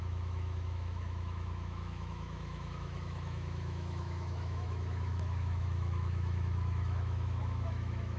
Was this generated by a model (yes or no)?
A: yes